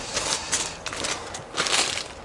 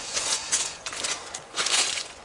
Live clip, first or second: first